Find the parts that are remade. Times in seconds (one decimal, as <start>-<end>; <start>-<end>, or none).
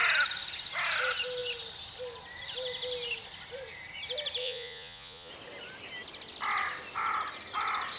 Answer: 4.4-5.3